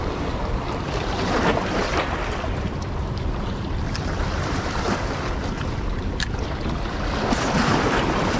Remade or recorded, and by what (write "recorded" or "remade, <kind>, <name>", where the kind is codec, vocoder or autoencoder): remade, vocoder, BigVGAN v2